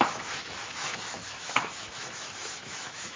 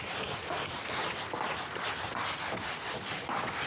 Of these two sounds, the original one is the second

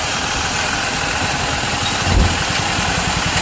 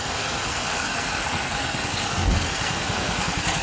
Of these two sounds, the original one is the first